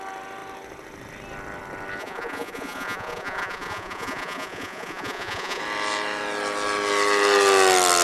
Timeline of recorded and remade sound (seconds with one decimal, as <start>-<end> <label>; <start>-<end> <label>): 0.0-2.0 recorded; 2.0-5.6 remade; 5.6-8.0 recorded